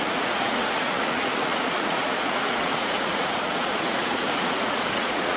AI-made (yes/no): yes